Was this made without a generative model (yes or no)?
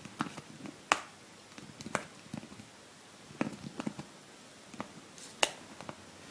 yes